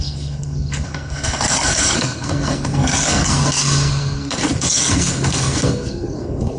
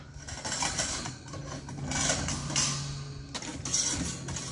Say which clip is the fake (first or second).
first